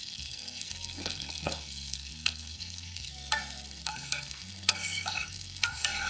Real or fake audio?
fake